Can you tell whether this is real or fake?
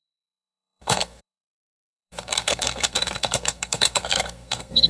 fake